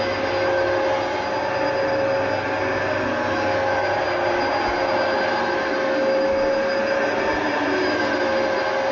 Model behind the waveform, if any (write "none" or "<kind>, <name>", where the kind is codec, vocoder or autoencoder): none